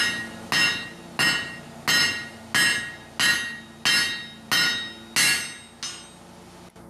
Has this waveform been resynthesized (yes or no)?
no